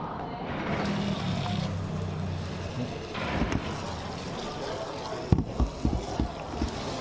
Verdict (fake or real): real